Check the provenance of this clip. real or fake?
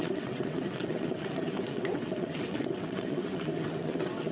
fake